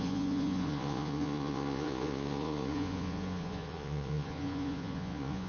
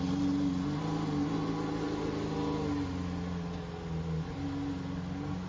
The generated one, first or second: first